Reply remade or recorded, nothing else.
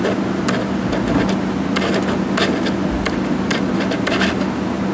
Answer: recorded